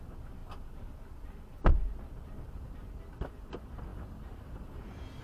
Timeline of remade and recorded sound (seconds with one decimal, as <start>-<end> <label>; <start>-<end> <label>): 0.0-5.2 recorded